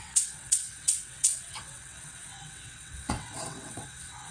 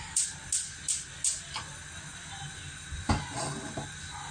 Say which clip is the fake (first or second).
first